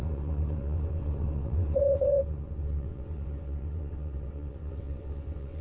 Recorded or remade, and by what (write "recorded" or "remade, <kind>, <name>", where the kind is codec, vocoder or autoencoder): remade, vocoder, WaveNeXt